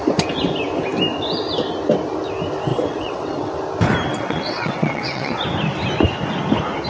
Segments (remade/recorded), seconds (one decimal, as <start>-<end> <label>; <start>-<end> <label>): 0.0-2.7 recorded; 2.7-3.5 remade; 3.5-4.1 recorded; 4.1-5.4 remade; 5.4-6.9 recorded